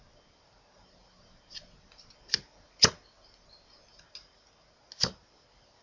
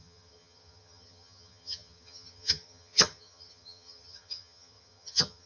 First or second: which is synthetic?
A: second